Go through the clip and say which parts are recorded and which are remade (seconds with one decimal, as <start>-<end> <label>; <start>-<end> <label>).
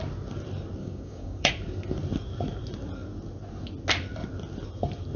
0.0-0.8 recorded; 0.8-1.5 remade; 1.5-5.2 recorded